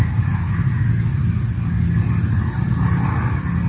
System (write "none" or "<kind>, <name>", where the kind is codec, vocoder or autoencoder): none